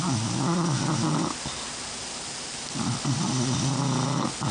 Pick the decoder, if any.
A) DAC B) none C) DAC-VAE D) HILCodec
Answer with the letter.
B